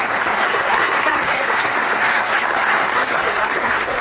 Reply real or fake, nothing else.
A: fake